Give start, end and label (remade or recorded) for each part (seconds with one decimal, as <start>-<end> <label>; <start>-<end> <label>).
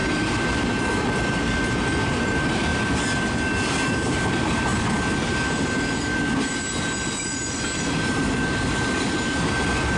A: 0.0-10.0 recorded